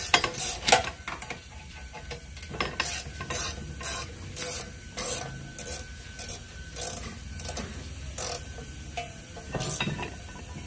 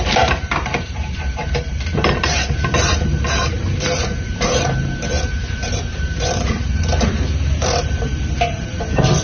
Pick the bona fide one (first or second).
first